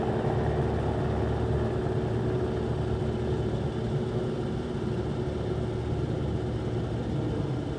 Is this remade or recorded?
recorded